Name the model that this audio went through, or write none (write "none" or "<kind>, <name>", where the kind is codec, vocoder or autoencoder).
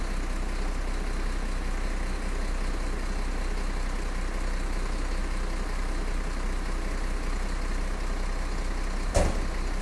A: none